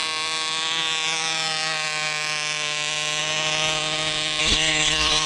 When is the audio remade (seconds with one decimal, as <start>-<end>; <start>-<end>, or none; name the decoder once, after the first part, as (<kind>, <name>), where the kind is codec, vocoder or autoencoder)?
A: 4.4-5.3 (codec, SNAC)